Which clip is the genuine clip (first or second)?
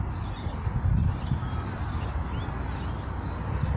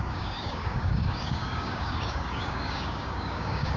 first